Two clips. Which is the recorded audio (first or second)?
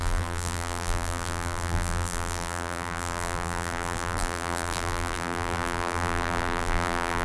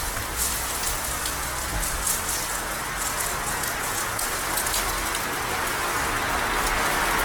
second